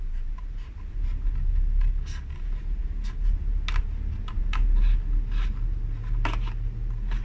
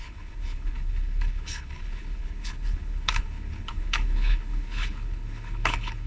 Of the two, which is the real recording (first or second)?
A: first